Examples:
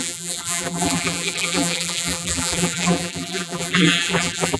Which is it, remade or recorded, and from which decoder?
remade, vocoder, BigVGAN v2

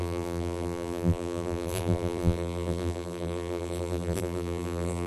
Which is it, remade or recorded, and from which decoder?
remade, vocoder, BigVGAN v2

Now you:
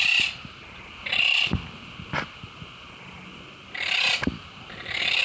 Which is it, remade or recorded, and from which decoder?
recorded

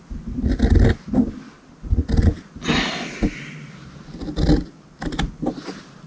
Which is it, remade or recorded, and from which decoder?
recorded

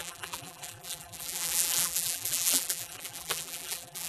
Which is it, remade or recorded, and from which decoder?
remade, vocoder, BigVGAN v2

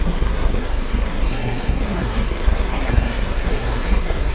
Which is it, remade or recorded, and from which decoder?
remade, codec, SNAC